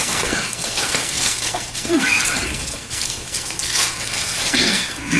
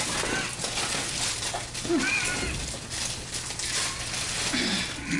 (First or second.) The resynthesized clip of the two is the first